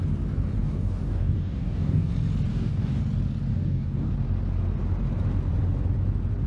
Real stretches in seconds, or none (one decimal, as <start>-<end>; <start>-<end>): 0.0-0.6; 2.1-2.5; 3.0-3.5; 4.1-6.5